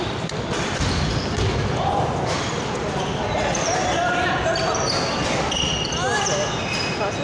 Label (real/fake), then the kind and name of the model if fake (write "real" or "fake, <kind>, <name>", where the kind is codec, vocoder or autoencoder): real